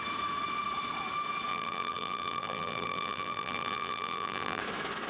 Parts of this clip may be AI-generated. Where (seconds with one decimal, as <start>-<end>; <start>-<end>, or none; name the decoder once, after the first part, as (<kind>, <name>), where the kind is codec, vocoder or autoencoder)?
1.5-4.6 (vocoder, BigVGAN v2)